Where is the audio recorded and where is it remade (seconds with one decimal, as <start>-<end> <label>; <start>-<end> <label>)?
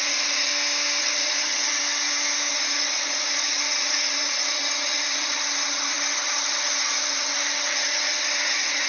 0.0-0.5 remade; 0.5-1.0 recorded; 1.0-1.8 remade; 1.8-2.5 recorded; 2.5-8.9 remade